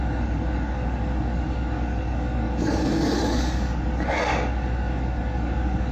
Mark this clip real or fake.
fake